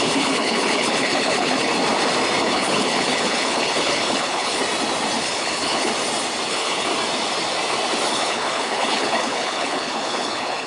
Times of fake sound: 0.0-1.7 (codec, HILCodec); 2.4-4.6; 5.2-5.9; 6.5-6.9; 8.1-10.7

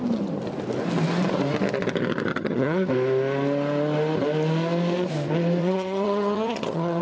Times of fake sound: 2.3-2.9 (vocoder, HiFi-GAN); 5.6-7.0

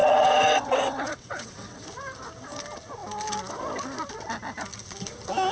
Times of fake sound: 0.0-1.8 (vocoder, WaveNeXt)

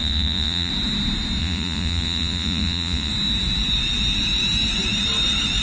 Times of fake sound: 0.0-0.7 (vocoder, Vocos); 1.4-3.1

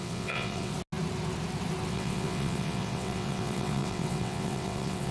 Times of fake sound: 0.0-0.7 (vocoder, WaveNeXt); 1.9-5.1

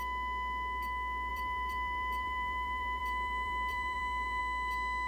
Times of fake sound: 1.3-4.4 (vocoder, BigVGAN v2)